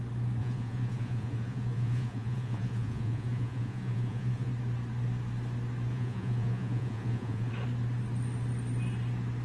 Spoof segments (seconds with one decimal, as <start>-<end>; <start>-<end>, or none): 0.4-4.5; 5.9-7.5